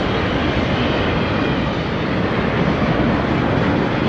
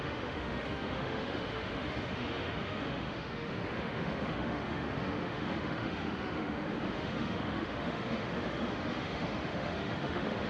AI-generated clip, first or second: second